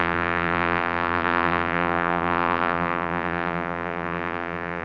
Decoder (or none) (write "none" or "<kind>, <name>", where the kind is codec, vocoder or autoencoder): vocoder, BigVGAN v2